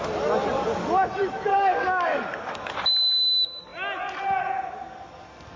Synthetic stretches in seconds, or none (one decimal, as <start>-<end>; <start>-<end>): 1.5-2.7